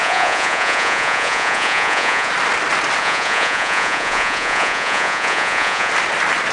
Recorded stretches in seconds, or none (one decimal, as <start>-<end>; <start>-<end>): 2.3-3.0; 5.9-6.5